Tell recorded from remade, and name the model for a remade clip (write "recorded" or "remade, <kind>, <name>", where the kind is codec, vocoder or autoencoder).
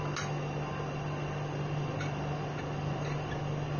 recorded